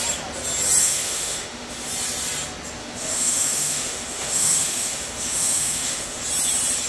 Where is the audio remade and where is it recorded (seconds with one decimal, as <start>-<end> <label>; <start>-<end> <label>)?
0.0-0.8 recorded; 0.8-1.9 remade; 1.9-2.8 recorded; 2.8-6.2 remade; 6.2-6.9 recorded